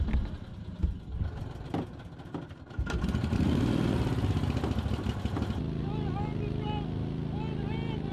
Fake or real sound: real